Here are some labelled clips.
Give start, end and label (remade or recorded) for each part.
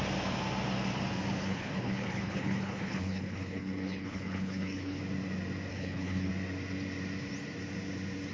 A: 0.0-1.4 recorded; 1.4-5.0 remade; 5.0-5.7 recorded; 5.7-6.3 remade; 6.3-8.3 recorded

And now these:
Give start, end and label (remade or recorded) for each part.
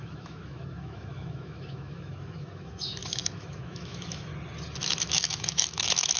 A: 0.0-4.3 remade; 4.3-4.8 recorded; 4.8-6.2 remade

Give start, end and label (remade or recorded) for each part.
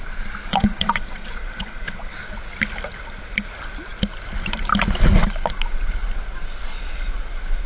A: 0.0-0.5 recorded; 0.5-2.2 remade; 2.2-7.7 recorded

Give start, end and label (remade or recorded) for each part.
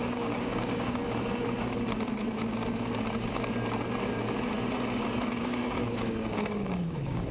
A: 0.0-1.0 remade; 1.0-5.4 recorded; 5.4-7.3 remade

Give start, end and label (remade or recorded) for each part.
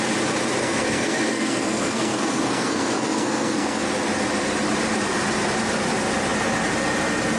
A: 0.0-0.6 recorded; 0.6-3.9 remade; 3.9-7.4 recorded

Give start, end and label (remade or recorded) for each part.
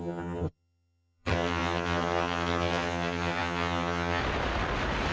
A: 0.0-4.2 remade; 4.2-5.1 recorded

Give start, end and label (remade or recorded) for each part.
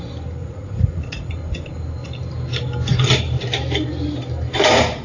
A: 0.0-0.4 recorded; 0.4-1.3 remade; 1.3-5.0 recorded